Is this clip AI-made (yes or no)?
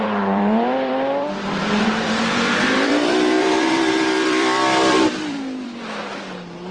yes